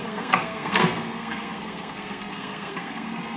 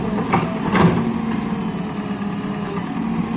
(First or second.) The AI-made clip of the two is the first